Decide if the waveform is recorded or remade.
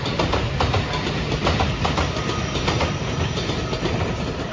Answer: recorded